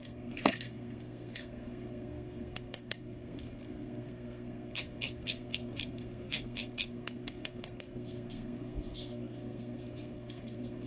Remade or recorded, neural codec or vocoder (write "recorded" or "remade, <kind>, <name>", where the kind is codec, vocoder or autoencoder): remade, codec, SNAC